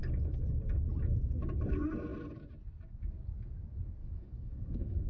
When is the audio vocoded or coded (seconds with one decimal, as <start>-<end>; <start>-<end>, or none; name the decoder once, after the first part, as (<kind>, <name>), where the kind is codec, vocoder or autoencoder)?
4.0-5.1 (autoencoder, DAC-VAE)